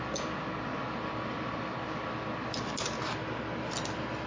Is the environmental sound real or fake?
real